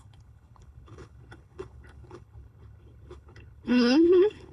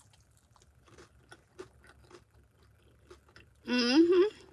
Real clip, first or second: second